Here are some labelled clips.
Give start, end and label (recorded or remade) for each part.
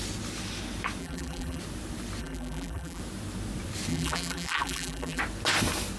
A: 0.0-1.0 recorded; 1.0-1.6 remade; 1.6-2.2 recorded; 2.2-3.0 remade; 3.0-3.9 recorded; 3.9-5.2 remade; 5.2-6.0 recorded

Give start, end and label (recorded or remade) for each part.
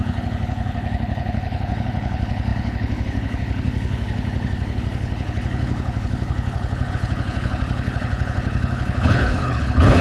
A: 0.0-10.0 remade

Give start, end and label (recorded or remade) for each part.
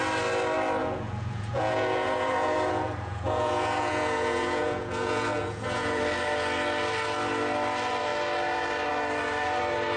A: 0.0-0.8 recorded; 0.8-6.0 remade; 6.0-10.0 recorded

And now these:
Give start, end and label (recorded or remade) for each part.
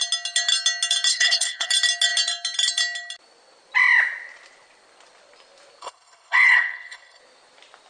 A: 0.0-1.1 recorded; 1.1-1.7 remade; 1.7-5.8 recorded; 5.8-7.2 remade; 7.2-7.9 recorded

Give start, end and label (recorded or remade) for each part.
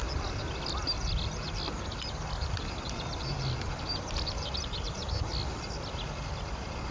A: 0.0-6.9 recorded